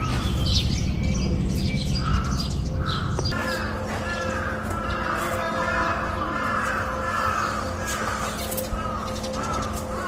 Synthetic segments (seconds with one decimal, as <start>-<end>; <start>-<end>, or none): none